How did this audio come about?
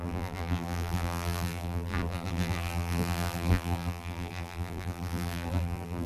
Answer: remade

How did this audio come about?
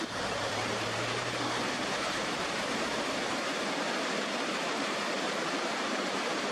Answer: remade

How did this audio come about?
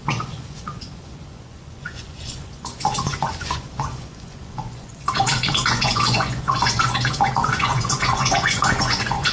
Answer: remade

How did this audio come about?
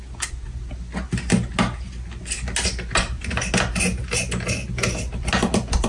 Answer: recorded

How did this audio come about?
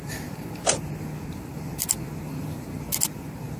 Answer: recorded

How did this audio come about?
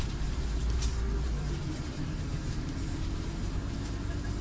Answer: remade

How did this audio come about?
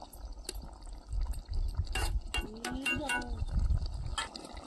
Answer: recorded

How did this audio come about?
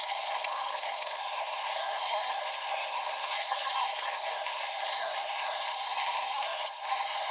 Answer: remade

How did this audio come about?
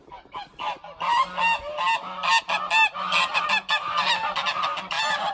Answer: recorded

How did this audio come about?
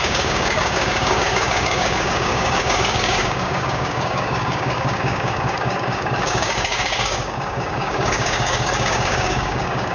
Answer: remade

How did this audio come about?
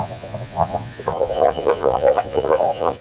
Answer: remade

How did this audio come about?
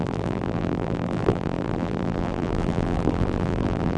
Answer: remade